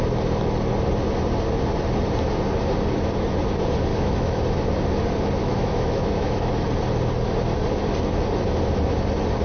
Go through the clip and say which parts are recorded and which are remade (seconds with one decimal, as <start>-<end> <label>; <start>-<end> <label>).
0.0-3.9 recorded; 3.9-4.4 remade; 4.4-5.4 recorded; 5.4-6.5 remade; 6.5-9.4 recorded